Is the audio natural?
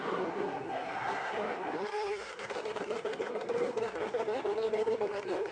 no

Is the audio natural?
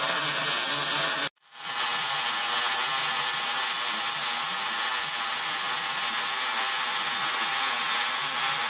yes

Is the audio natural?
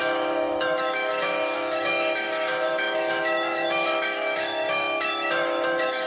no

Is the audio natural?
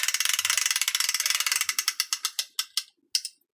yes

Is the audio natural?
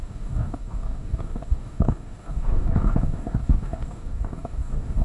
no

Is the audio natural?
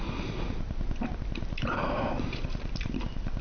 no